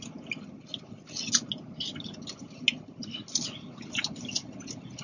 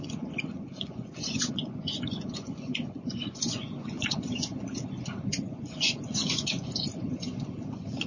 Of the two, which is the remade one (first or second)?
second